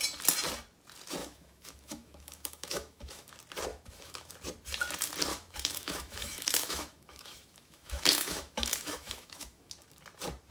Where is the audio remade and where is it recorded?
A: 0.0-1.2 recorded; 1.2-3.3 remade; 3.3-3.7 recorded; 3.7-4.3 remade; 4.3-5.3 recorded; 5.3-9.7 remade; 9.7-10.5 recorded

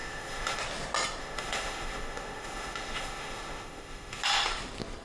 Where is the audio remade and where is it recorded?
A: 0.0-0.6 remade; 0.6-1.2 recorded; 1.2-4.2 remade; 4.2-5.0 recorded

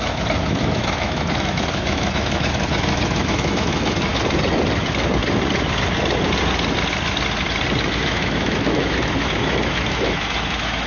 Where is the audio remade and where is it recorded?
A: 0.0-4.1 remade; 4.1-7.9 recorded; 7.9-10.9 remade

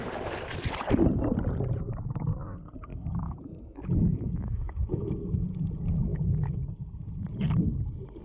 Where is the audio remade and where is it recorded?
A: 0.0-2.9 recorded; 2.9-5.2 remade; 5.2-8.2 recorded

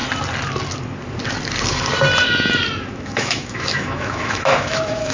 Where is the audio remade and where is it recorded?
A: 0.0-2.9 recorded; 2.9-5.1 remade